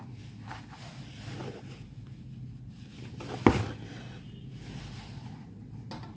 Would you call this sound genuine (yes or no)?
yes